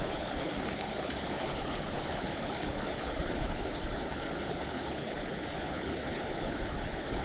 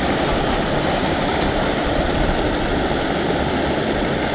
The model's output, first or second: first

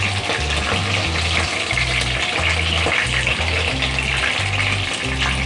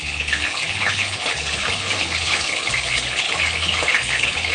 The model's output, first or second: second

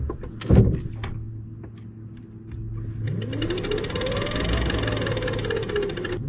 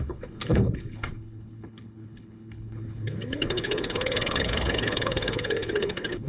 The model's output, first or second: second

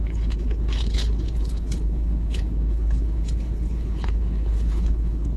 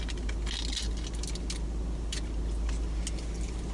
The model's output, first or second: first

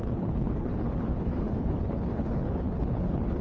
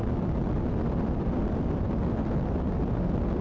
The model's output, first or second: first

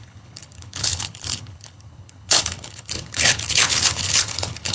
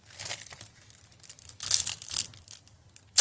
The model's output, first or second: first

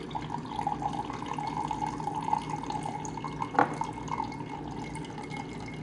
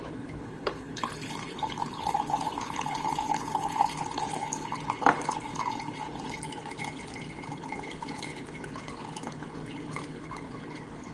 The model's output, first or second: second